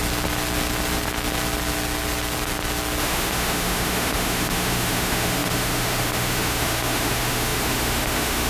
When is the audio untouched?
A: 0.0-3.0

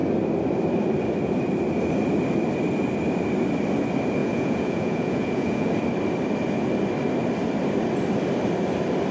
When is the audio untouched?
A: 0.0-4.2; 5.7-9.1

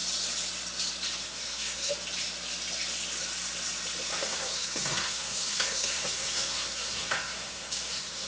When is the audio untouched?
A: 0.0-1.2; 1.9-4.1

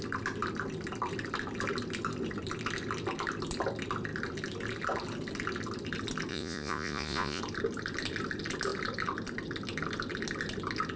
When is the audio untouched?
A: 0.0-6.3; 7.4-11.0

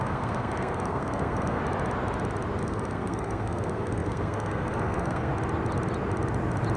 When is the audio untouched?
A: 1.6-2.6; 5.3-6.8

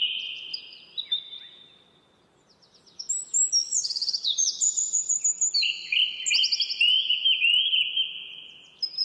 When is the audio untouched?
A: 0.0-3.6; 5.2-9.0

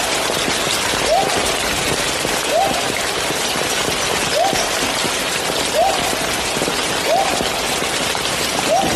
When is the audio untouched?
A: 0.0-9.0